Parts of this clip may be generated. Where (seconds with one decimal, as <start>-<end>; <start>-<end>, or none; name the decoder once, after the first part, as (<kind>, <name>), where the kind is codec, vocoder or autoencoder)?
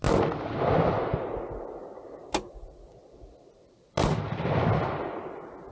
none